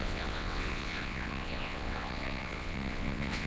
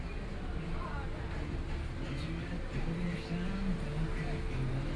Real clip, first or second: second